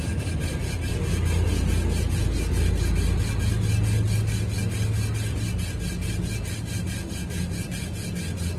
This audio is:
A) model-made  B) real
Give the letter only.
B